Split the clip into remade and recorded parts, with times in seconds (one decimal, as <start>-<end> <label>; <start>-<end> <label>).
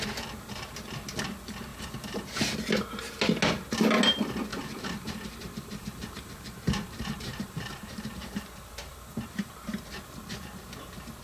0.0-1.7 recorded; 1.7-2.3 remade; 2.3-4.5 recorded; 4.5-9.8 remade; 9.8-11.2 recorded